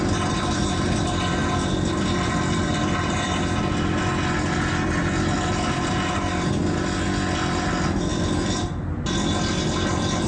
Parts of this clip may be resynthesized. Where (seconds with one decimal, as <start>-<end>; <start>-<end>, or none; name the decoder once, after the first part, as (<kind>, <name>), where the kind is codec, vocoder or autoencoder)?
none